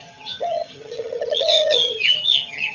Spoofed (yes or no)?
yes